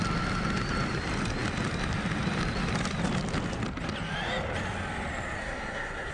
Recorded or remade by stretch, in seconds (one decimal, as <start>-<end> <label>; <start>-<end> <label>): 0.0-5.4 recorded; 5.4-6.1 remade